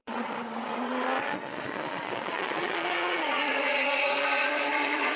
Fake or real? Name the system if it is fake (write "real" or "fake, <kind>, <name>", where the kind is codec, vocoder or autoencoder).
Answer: fake, vocoder, Vocos